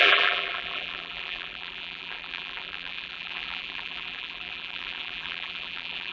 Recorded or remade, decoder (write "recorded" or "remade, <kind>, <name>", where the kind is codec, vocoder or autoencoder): remade, vocoder, BigVGAN v2